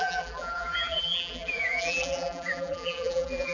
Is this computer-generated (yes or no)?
yes